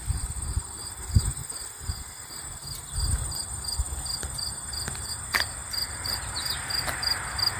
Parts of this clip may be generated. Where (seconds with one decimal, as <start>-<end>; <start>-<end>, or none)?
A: none